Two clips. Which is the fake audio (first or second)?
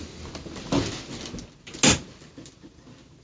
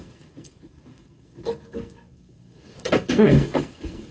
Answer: second